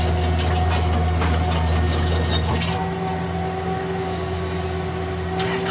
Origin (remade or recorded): recorded